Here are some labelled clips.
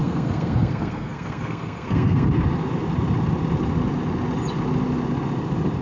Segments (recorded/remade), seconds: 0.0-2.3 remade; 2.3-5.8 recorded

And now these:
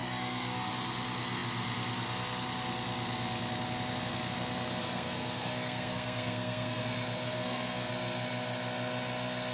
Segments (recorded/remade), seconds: 0.0-0.7 remade; 0.7-4.8 recorded; 4.8-6.8 remade; 6.8-7.2 recorded; 7.2-7.9 remade; 7.9-9.5 recorded

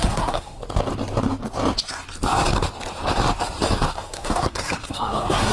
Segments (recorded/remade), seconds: 0.0-0.6 remade; 0.6-3.9 recorded; 3.9-5.5 remade

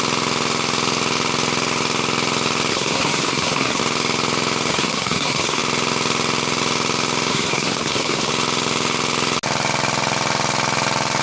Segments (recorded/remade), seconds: 0.0-2.7 recorded; 2.7-3.8 remade; 3.8-4.7 recorded; 4.7-5.6 remade; 5.6-7.3 recorded; 7.3-8.3 remade; 8.3-11.2 recorded